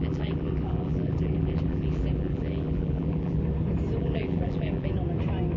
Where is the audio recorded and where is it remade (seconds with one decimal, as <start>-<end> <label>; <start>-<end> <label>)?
0.0-3.4 remade; 3.4-4.0 recorded; 4.0-4.9 remade; 4.9-5.6 recorded